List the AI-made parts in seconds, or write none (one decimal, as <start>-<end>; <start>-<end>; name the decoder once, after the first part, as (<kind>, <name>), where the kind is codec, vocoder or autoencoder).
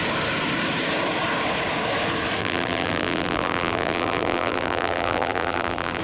2.4-6.0 (vocoder, BigVGAN v2)